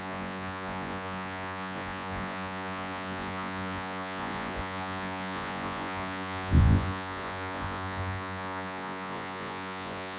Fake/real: fake